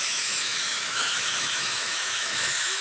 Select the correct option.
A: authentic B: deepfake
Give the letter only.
B